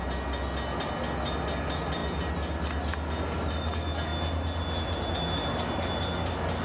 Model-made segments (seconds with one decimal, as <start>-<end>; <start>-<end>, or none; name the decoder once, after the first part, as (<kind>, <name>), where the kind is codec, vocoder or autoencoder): none